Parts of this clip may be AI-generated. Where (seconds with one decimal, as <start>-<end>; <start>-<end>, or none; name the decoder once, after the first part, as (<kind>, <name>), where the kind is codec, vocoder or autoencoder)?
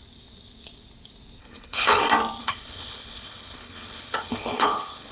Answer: 1.4-2.0 (codec, HILCodec); 2.4-5.1